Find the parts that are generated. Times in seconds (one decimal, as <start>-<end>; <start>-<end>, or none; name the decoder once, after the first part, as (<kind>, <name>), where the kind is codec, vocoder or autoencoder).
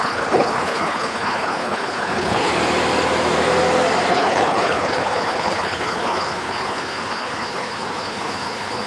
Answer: 0.0-2.5 (codec, HILCodec); 4.1-8.9